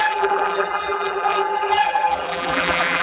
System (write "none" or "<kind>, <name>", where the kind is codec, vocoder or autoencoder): vocoder, BigVGAN v2